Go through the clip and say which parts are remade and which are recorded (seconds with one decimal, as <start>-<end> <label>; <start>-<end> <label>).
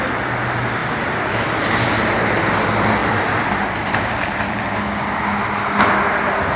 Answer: 0.0-0.8 recorded; 0.8-1.3 remade; 1.3-3.0 recorded; 3.0-4.6 remade; 4.6-6.6 recorded